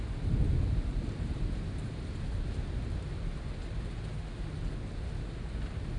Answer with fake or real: real